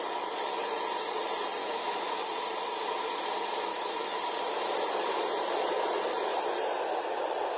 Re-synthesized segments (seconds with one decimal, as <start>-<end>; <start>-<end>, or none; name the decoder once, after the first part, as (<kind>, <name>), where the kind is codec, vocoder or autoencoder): 1.6-2.1 (autoencoder, DAC-VAE); 3.7-4.2